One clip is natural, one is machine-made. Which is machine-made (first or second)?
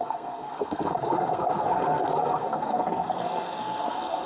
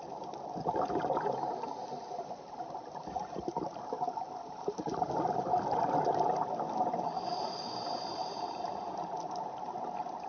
first